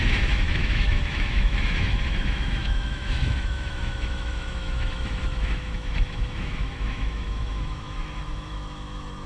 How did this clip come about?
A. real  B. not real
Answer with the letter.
B